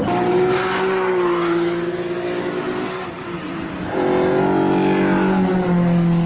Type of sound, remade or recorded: recorded